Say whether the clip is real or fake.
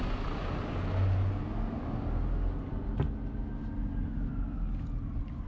real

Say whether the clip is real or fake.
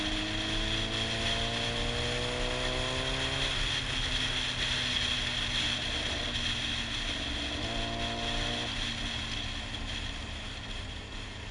real